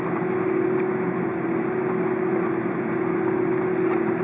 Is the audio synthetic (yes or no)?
no